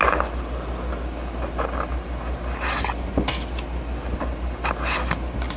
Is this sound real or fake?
real